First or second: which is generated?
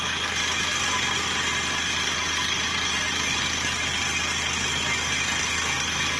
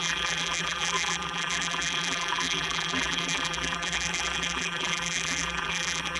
second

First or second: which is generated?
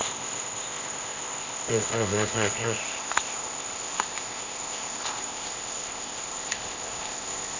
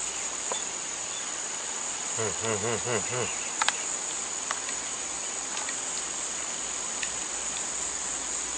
first